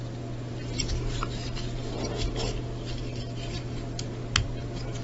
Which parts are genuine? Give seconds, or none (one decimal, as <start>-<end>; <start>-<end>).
0.0-5.0